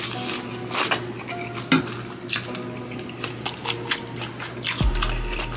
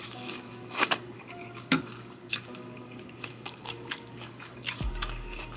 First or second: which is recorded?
first